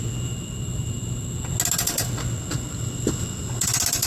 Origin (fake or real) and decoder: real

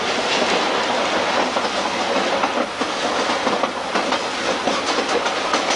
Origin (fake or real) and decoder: real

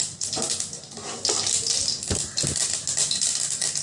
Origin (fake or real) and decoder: real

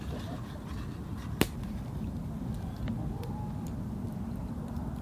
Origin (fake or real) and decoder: real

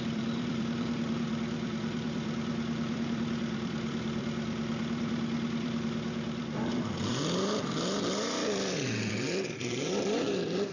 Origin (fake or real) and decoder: fake, vocoder, BigVGAN v2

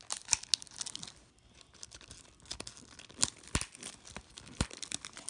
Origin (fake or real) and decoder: real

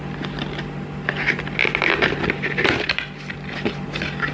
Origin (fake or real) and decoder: real